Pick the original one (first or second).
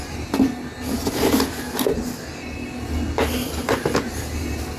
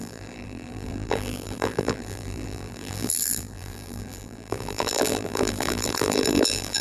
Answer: first